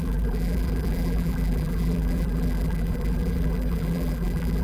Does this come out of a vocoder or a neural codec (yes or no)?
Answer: yes